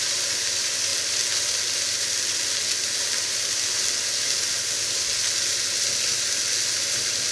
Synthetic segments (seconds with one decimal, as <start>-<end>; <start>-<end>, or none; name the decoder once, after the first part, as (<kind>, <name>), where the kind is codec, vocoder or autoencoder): none